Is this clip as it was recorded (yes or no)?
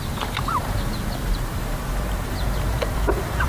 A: no